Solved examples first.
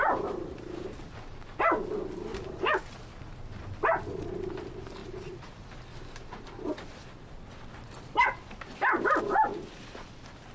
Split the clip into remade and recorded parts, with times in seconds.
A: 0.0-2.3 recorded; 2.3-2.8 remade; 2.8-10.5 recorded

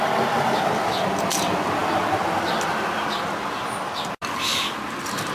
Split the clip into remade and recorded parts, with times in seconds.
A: 0.0-5.3 recorded